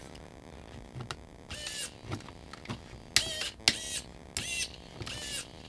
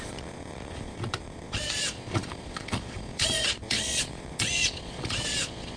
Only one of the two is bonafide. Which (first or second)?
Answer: first